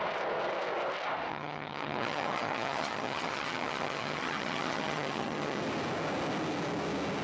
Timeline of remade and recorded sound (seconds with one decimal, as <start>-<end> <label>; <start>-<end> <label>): 0.0-1.3 recorded; 1.3-5.6 remade; 5.6-7.2 recorded